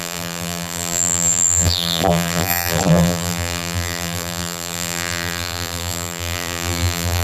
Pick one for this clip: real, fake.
fake